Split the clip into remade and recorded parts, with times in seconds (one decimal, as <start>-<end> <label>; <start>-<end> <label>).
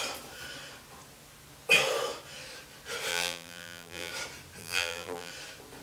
0.0-3.1 recorded; 3.1-4.1 remade; 4.1-4.6 recorded; 4.6-5.3 remade; 5.3-5.8 recorded